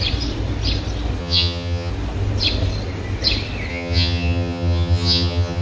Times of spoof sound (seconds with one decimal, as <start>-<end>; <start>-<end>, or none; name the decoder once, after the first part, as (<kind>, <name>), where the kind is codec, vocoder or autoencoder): 1.2-1.9 (vocoder, HiFi-GAN); 3.7-5.6